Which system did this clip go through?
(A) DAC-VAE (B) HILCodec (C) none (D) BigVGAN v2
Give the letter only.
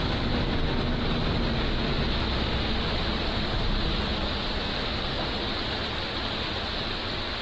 C